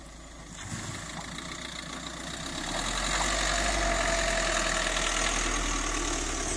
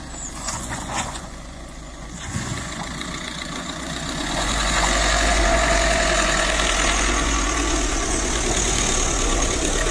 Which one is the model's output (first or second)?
second